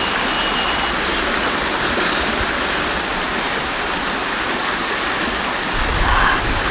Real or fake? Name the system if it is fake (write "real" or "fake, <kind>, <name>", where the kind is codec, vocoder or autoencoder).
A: real